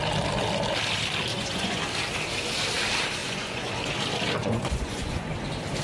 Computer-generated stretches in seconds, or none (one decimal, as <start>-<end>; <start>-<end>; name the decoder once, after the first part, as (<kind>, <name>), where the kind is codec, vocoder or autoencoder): 1.3-1.8 (vocoder, Vocos); 3.2-3.7; 4.4-5.3